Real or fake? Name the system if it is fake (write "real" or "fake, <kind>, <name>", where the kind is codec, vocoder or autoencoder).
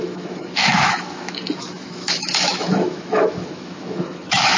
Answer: fake, autoencoder, DAC-VAE